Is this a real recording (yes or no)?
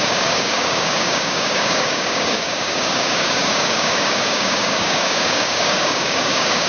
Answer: no